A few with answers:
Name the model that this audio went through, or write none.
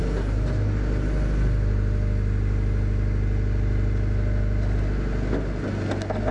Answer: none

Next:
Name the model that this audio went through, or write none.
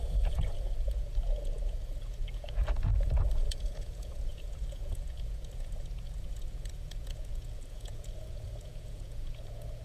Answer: vocoder, Vocos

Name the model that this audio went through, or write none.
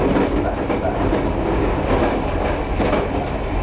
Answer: none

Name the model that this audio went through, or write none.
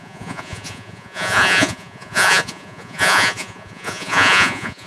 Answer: vocoder, Vocos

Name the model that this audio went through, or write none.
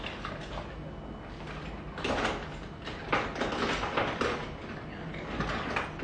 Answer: none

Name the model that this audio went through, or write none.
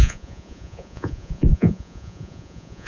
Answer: vocoder, Vocos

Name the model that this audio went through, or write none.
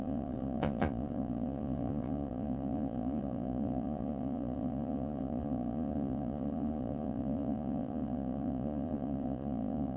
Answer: vocoder, Vocos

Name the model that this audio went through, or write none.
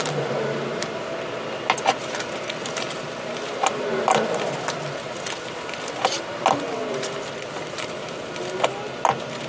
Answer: none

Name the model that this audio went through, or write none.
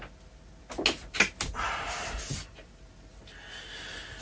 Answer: none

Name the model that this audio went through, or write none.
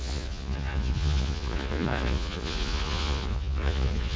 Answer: vocoder, Vocos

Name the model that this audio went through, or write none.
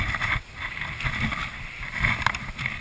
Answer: none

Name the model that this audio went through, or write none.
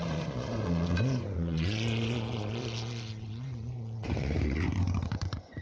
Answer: vocoder, Vocos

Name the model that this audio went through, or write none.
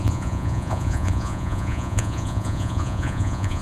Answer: vocoder, Vocos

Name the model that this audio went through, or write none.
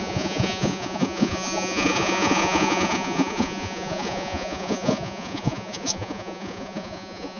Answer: vocoder, Vocos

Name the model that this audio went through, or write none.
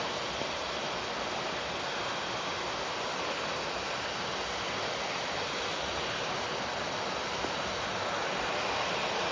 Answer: none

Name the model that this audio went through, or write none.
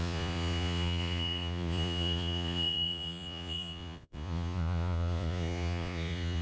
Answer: vocoder, Vocos